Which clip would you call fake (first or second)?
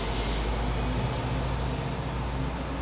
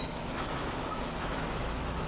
second